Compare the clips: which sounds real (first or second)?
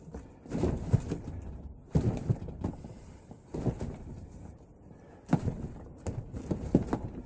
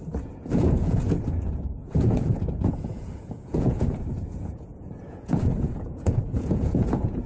first